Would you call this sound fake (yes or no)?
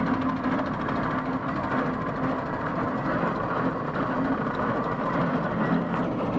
no